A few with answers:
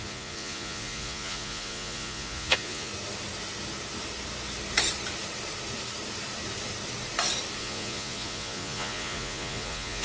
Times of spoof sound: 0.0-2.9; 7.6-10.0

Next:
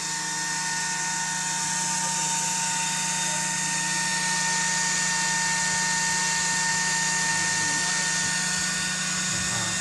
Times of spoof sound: 6.7-7.3

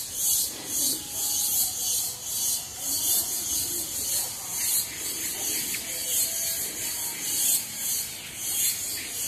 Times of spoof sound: 2.7-4.6; 6.0-8.0

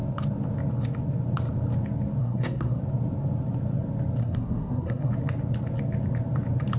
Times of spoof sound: 2.2-2.8; 4.2-5.1

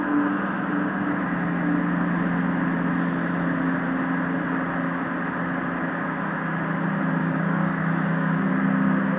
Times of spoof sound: 7.2-8.5